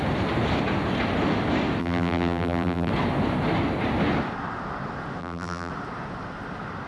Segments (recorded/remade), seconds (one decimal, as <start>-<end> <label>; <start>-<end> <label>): 0.0-1.8 recorded; 1.8-2.9 remade; 2.9-5.2 recorded; 5.2-5.7 remade; 5.7-6.9 recorded